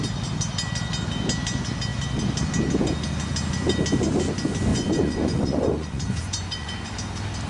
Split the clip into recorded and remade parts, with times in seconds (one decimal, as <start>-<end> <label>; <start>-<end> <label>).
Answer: 0.0-4.7 recorded; 4.7-6.9 remade; 6.9-7.5 recorded